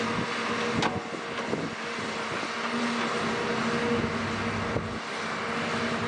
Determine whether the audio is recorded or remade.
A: recorded